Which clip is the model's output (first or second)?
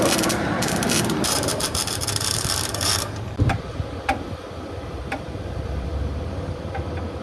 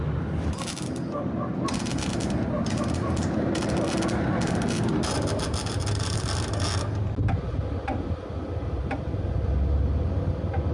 first